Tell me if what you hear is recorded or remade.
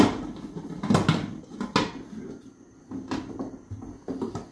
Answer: recorded